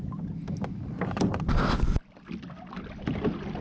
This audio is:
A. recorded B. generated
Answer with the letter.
A